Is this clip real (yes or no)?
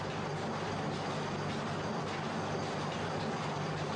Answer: yes